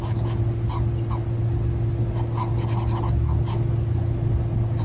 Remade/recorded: recorded